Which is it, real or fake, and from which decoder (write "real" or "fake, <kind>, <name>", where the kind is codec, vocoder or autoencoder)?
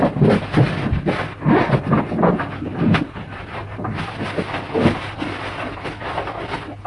real